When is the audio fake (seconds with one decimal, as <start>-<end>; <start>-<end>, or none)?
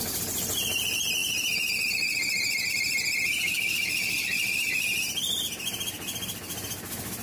none